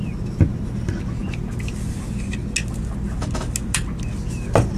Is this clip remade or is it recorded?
recorded